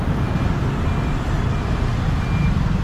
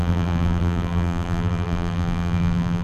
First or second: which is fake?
second